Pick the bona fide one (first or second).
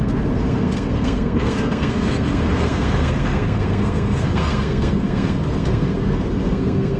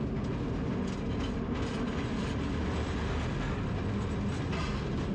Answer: second